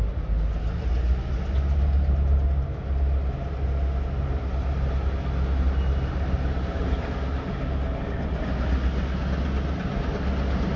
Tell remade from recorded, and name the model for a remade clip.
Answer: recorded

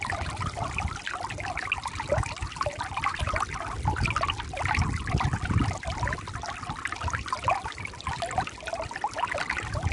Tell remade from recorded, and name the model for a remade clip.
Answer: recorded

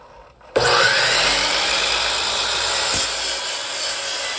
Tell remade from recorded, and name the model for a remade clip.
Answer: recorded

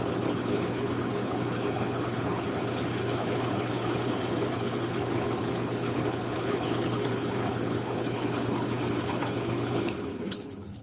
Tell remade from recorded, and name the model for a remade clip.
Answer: remade, codec, HILCodec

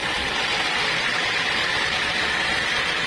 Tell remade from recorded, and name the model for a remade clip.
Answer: recorded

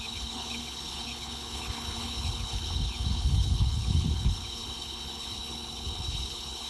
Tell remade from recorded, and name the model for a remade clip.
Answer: remade, codec, HILCodec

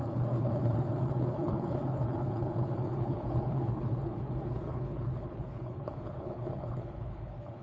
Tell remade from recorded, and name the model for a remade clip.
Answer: remade, codec, HILCodec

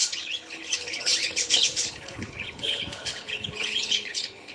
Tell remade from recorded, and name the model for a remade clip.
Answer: remade, codec, HILCodec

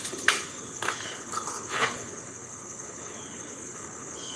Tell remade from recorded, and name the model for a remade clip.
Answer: remade, codec, HILCodec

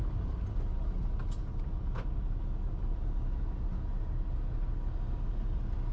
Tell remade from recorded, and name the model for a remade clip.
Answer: recorded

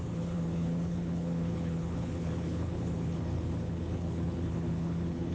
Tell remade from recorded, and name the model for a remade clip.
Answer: remade, codec, HILCodec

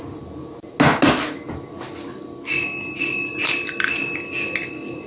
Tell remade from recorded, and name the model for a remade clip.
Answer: recorded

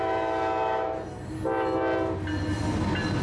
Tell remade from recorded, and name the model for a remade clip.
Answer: recorded